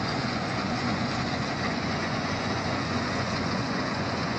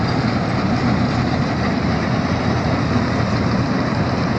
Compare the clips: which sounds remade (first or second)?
first